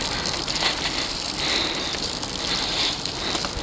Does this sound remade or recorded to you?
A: recorded